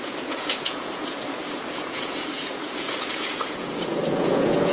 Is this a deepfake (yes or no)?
yes